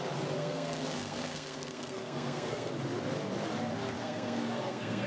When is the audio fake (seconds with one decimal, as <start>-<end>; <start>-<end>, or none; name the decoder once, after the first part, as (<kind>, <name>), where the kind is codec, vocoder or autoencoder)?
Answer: 0.4-2.7 (codec, SNAC); 4.0-5.1